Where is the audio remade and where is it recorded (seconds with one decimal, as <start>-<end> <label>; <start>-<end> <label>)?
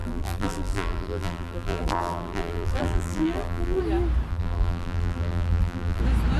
0.0-3.8 remade; 3.8-4.3 recorded; 4.3-6.0 remade; 6.0-6.4 recorded